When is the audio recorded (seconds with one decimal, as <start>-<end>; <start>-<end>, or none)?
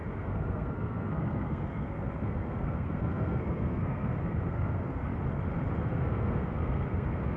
5.1-5.9